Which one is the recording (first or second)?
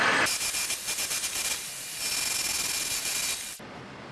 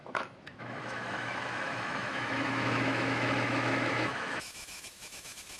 first